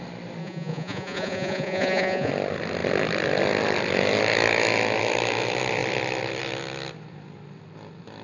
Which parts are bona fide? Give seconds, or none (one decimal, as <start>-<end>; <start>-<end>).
0.0-0.4; 2.3-8.2